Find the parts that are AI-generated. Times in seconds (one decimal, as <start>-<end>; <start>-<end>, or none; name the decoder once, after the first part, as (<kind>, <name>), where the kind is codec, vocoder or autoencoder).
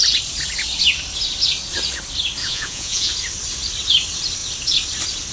2.4-3.1 (vocoder, Vocos)